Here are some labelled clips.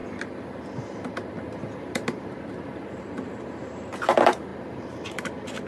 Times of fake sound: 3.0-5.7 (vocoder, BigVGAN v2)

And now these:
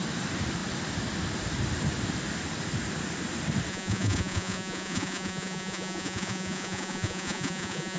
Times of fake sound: 3.7-8.0 (vocoder, Vocos)